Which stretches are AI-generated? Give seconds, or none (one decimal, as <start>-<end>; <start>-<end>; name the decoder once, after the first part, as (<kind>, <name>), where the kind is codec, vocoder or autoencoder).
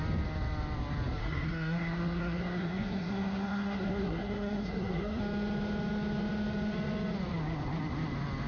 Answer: 1.2-5.2 (codec, SNAC)